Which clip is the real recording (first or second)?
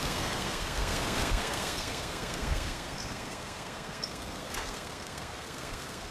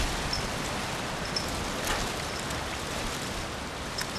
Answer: second